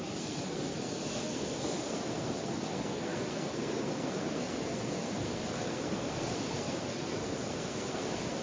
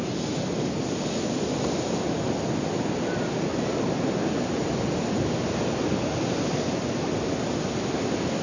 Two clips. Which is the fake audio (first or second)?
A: first